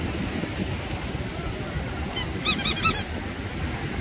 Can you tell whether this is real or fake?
real